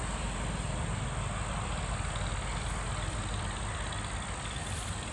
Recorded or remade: recorded